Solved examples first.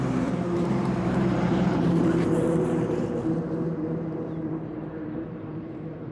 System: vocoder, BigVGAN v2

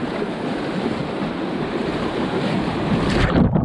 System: vocoder, BigVGAN v2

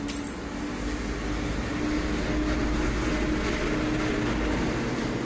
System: none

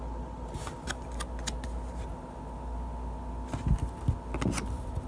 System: none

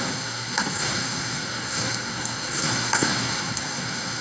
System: codec, SNAC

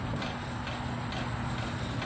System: none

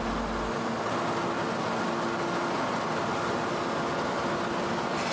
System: none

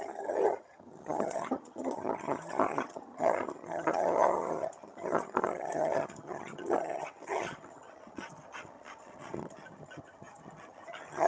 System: vocoder, HiFi-GAN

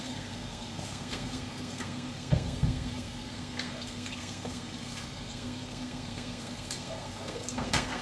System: codec, SNAC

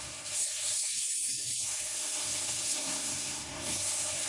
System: codec, SNAC